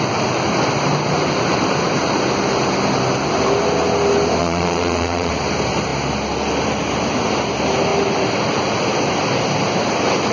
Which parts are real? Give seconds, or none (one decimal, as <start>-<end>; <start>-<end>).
0.0-4.4; 5.3-10.3